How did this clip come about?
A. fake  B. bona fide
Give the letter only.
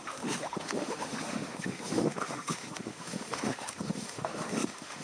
A